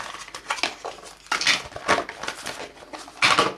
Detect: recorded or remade recorded